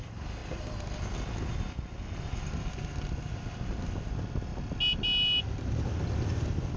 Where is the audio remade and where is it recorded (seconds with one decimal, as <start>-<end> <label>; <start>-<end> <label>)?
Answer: 0.0-6.8 recorded